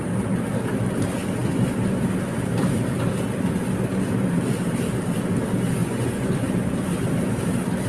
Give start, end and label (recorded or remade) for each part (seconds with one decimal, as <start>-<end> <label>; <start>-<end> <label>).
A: 0.0-5.8 recorded; 5.8-6.5 remade; 6.5-7.9 recorded